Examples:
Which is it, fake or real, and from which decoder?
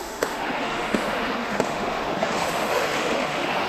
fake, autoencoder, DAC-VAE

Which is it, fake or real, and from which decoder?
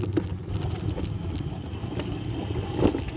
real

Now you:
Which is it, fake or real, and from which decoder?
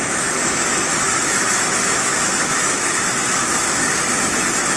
fake, autoencoder, DAC-VAE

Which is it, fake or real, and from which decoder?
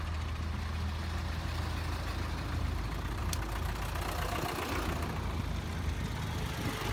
real